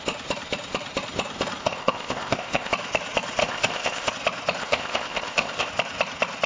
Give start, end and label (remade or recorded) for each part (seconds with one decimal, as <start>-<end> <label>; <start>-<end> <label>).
0.0-1.6 recorded; 1.6-2.7 remade; 2.7-3.4 recorded; 3.4-4.1 remade; 4.1-4.6 recorded; 4.6-5.7 remade; 5.7-6.5 recorded